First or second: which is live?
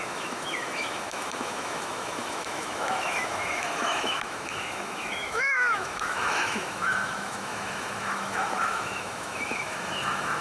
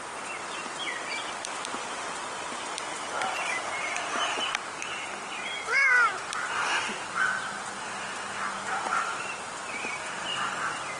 second